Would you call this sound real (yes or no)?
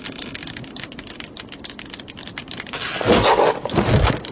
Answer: yes